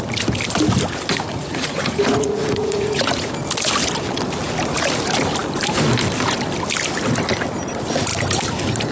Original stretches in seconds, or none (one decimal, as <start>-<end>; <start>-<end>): 0.0-1.3; 3.3-8.9